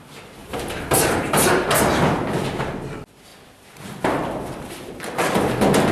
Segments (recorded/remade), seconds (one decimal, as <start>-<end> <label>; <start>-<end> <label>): 0.0-0.4 recorded; 0.4-1.5 remade; 1.5-5.9 recorded